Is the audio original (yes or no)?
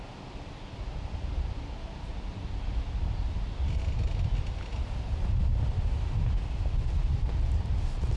yes